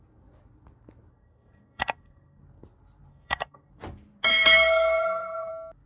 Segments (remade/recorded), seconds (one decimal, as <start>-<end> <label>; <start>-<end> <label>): 0.0-1.1 recorded; 1.1-2.4 remade; 2.4-3.1 recorded; 3.1-3.7 remade; 3.7-4.3 recorded; 4.3-5.5 remade; 5.5-5.9 recorded

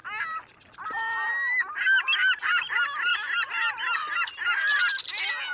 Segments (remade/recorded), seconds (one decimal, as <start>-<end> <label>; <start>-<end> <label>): 0.0-5.5 recorded